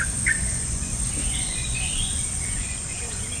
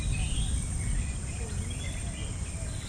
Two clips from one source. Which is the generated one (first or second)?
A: first